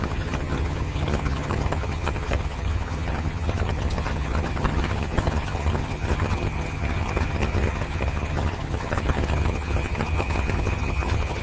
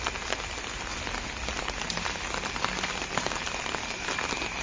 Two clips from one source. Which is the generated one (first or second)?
first